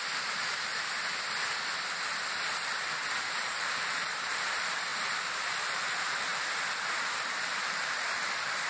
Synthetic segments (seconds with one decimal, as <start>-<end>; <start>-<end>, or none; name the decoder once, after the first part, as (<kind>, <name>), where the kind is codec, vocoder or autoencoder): 0.0-0.7 (vocoder, BigVGAN v2); 3.2-6.3; 7.1-8.7